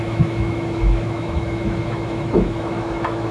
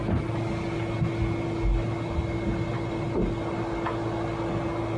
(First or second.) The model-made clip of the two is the first